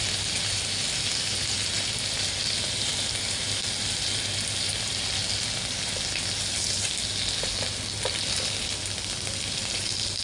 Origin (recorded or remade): recorded